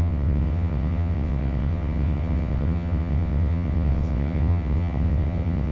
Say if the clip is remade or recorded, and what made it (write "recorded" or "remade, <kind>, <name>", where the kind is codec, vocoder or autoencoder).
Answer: remade, vocoder, WaveNeXt